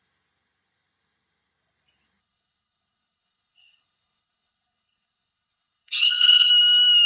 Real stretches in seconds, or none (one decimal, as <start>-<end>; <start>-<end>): 0.0-2.2; 6.5-7.1